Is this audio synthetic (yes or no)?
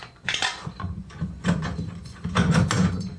yes